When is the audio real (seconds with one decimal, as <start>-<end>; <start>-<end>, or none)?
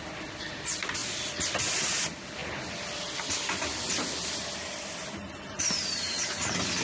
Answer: 0.0-6.8